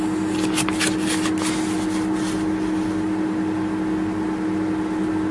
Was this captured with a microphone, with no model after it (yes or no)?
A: yes